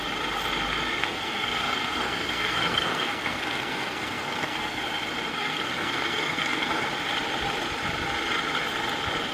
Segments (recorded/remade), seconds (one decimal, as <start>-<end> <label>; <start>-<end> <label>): 0.0-1.0 recorded; 1.0-4.8 remade; 4.8-5.3 recorded; 5.3-6.9 remade; 6.9-9.3 recorded